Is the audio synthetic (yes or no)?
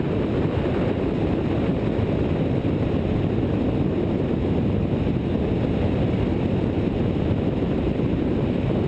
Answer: no